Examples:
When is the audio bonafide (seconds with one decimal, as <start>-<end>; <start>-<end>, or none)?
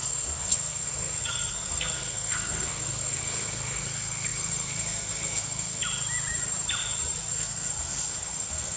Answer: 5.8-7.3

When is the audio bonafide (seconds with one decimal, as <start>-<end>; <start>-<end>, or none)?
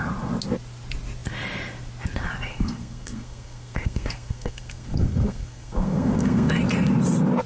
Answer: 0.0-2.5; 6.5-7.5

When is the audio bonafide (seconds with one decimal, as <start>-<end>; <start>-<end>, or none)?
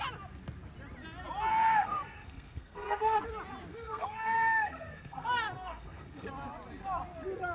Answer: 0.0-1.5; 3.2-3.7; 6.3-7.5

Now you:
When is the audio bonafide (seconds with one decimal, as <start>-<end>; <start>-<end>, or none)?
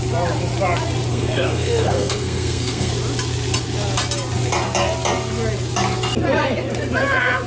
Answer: 0.0-1.1; 2.9-7.5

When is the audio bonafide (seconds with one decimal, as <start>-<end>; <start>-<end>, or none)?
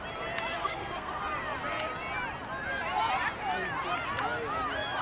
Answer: 0.0-0.6; 1.2-5.0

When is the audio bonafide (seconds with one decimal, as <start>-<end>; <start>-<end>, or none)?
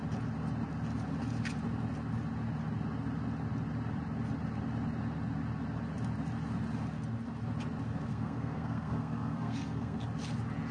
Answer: 0.0-8.1; 10.0-10.7